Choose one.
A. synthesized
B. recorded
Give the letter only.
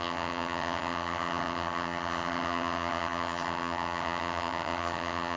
A